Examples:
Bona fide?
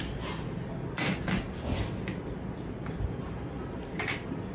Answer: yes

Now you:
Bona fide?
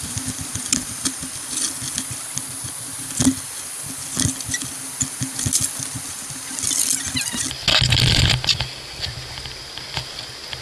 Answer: yes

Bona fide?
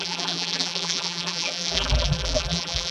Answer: no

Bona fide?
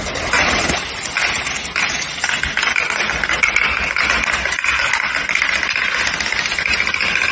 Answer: yes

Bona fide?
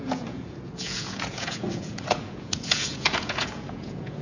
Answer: no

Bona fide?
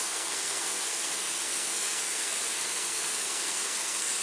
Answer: no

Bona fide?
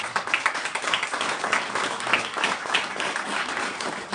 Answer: no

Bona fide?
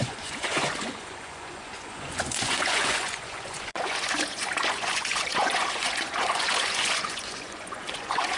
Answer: no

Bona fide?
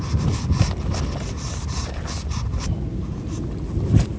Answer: yes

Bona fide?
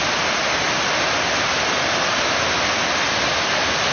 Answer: yes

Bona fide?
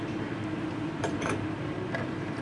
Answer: no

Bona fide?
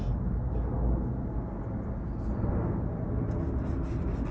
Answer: yes